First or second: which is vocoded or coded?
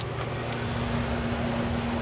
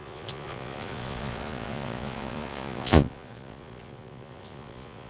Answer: second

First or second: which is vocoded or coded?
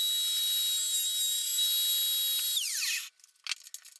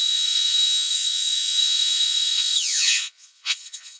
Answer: second